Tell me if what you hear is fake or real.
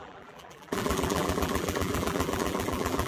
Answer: fake